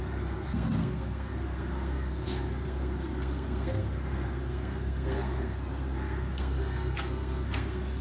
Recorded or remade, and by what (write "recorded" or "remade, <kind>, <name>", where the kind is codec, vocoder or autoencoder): remade, codec, SNAC